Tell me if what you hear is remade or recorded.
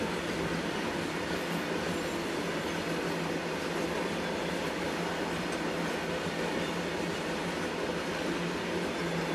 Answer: recorded